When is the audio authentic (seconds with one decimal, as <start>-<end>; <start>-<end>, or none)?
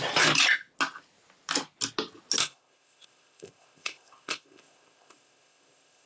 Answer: 0.0-2.4